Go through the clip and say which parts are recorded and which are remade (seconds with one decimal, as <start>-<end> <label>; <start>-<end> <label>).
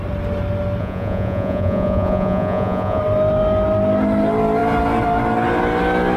0.0-0.8 recorded; 0.8-3.0 remade; 3.0-6.2 recorded